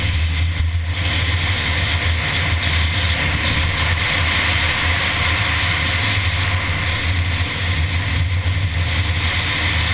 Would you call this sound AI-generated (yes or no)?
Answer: no